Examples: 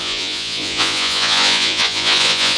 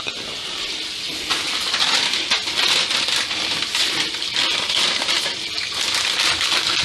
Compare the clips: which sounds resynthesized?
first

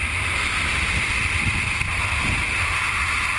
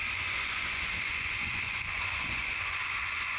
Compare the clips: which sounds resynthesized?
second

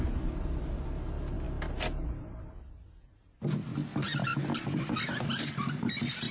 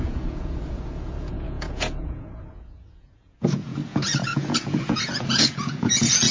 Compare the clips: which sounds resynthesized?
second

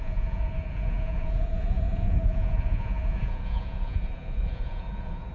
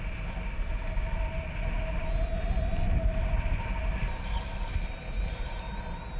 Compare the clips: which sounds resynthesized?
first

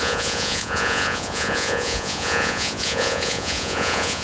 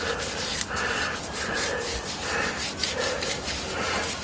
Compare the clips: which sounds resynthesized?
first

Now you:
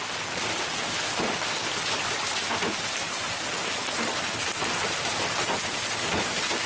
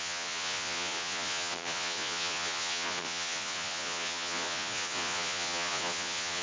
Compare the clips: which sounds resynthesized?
second